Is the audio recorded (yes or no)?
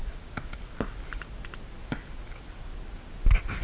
yes